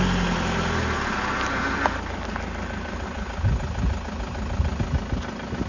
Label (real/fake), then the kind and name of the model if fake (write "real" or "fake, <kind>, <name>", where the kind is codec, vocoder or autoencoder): real